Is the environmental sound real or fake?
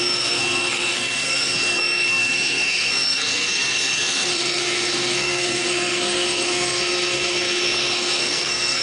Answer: fake